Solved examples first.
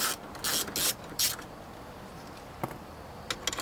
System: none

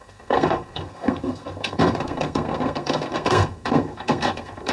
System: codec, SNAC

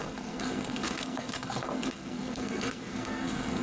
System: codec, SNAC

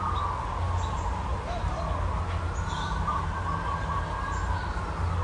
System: none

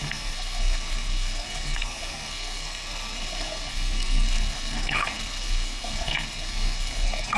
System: codec, SNAC